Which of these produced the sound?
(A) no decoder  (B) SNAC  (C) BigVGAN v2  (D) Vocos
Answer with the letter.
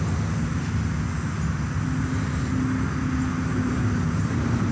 A